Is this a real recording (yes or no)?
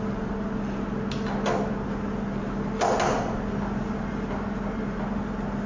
yes